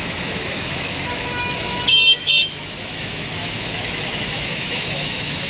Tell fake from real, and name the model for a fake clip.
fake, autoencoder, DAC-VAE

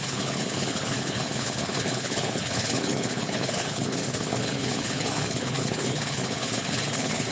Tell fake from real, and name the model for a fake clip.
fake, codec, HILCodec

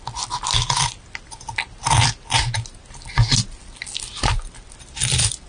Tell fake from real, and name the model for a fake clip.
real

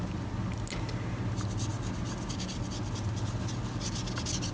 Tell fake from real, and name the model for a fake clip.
real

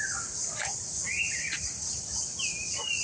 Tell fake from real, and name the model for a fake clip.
real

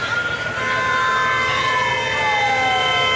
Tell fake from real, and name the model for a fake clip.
real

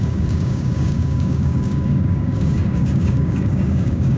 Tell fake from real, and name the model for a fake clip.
fake, codec, DAC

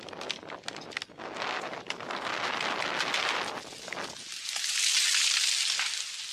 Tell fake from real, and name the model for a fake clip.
real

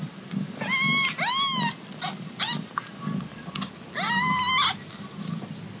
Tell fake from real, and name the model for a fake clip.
real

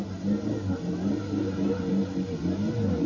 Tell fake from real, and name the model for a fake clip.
real